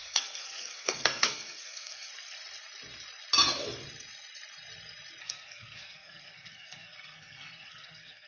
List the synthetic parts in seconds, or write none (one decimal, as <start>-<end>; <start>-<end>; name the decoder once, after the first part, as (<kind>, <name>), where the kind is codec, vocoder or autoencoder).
0.0-2.1 (codec, SNAC); 5.2-8.3